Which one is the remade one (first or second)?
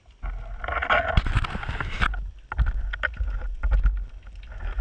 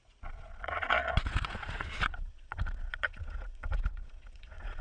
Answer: second